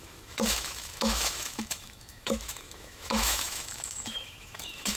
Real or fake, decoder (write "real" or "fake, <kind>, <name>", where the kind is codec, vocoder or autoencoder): fake, autoencoder, DAC-VAE